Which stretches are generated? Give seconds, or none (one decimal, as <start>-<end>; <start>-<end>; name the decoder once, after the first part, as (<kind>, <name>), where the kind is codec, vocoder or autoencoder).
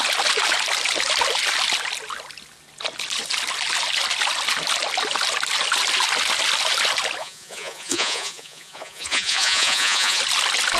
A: 7.2-10.2 (vocoder, Vocos)